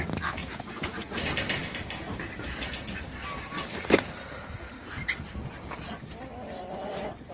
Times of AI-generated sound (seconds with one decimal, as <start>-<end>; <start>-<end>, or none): 0.4-1.2

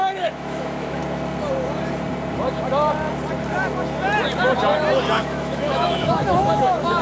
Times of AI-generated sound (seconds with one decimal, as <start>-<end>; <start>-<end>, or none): 0.0-1.0; 5.2-7.0

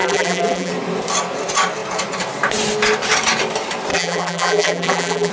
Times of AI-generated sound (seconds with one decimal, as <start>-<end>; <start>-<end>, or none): 0.0-0.7; 3.9-5.3

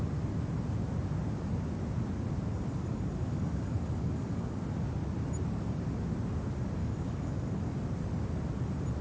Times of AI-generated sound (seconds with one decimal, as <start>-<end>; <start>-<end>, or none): 2.5-4.6; 6.8-7.6

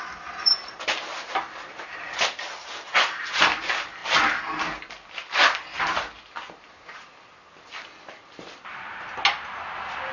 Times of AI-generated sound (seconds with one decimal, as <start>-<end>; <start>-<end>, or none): none